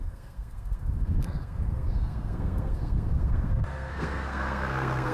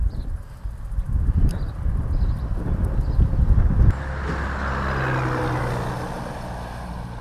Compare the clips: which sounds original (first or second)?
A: second